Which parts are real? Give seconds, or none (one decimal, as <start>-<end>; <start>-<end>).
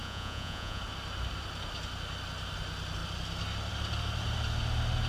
0.8-5.1